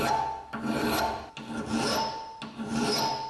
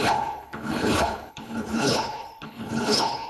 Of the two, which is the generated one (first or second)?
second